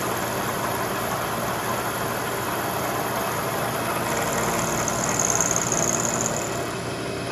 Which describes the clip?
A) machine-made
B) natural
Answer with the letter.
B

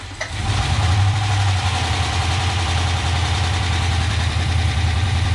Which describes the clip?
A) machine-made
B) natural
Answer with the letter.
A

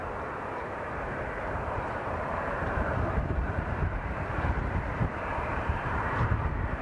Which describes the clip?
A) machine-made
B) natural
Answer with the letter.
A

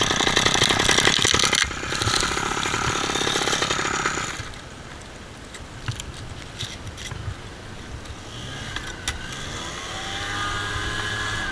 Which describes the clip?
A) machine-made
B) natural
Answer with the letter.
B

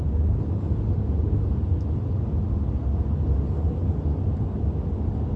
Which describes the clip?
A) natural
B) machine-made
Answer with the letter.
A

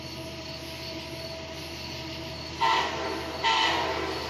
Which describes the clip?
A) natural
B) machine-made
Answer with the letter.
A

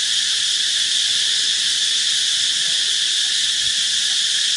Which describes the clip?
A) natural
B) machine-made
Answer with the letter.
A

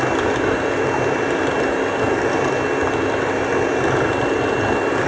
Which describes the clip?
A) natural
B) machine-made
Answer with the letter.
A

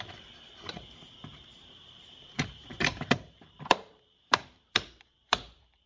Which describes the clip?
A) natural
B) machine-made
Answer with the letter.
B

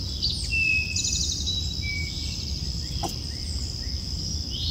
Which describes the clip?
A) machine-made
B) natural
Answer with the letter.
B